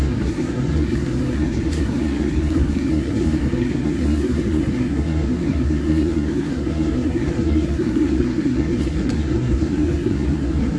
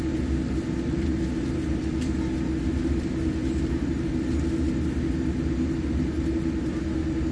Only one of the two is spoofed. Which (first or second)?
first